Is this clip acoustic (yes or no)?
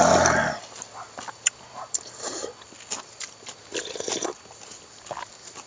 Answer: yes